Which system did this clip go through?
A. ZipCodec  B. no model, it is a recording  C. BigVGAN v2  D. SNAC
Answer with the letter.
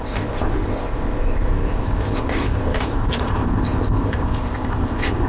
A